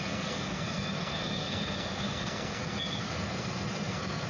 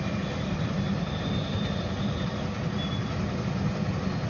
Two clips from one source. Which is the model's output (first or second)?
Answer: first